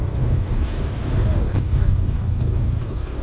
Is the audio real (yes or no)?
no